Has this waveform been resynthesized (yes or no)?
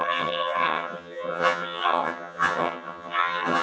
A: yes